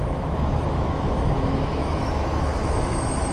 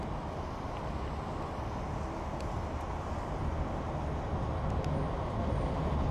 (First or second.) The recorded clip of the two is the second